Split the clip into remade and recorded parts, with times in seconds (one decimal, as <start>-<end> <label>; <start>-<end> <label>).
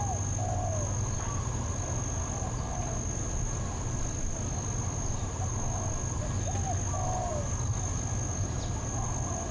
0.0-9.5 recorded